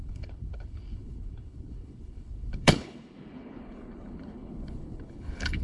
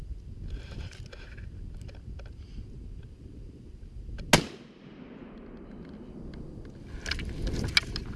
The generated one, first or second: first